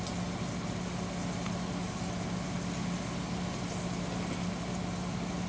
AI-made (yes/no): no